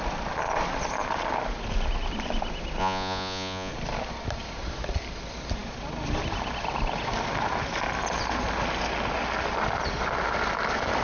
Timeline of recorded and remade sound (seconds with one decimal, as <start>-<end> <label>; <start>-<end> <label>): 0.0-2.8 recorded; 2.8-3.7 remade; 3.7-11.0 recorded